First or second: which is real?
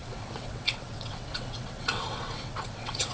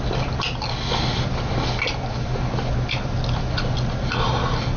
second